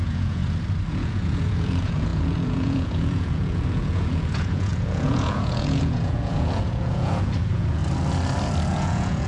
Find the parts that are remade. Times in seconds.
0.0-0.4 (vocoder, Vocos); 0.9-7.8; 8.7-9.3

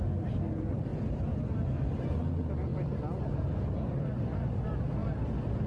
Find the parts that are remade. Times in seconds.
0.9-1.7 (vocoder, BigVGAN v2); 5.0-5.7

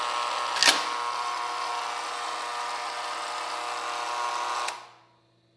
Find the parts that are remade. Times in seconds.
none